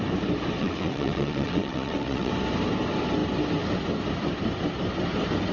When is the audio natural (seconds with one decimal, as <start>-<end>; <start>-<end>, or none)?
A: 0.0-0.6; 2.3-5.5